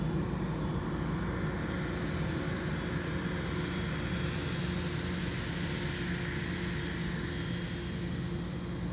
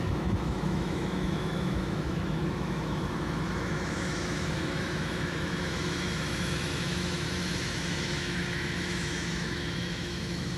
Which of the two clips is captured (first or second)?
first